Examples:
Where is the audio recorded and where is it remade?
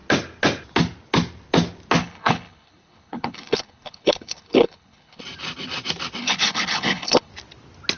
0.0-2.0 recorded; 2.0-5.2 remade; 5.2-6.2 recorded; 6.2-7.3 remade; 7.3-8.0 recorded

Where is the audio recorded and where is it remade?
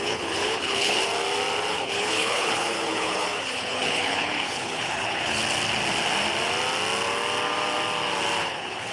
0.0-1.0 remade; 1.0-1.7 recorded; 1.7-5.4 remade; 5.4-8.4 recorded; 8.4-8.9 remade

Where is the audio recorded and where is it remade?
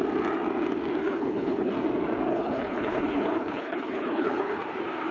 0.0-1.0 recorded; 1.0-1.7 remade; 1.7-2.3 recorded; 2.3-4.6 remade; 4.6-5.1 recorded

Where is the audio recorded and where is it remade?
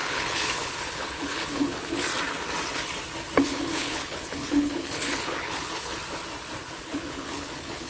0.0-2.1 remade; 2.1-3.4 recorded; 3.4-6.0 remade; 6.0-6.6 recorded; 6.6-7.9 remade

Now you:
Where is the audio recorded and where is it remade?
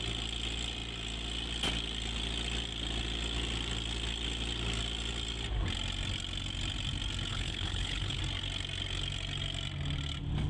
0.0-7.3 recorded; 7.3-8.2 remade; 8.2-10.5 recorded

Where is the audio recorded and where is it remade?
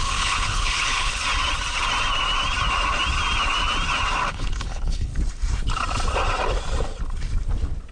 0.0-1.2 remade; 1.2-4.3 recorded; 4.3-5.1 remade; 5.1-7.9 recorded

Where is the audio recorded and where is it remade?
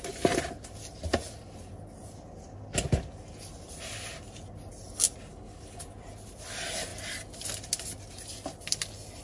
0.0-5.3 recorded; 5.3-5.8 remade; 5.8-9.2 recorded